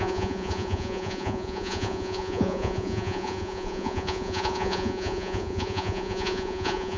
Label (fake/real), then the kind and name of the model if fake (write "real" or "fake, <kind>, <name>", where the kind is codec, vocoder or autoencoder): fake, vocoder, Vocos